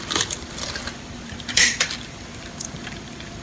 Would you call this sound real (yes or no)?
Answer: no